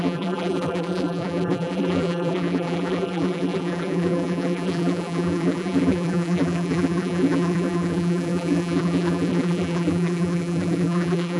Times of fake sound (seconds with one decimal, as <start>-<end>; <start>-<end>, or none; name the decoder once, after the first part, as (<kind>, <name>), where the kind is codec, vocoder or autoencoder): 0.0-11.4 (vocoder, BigVGAN v2)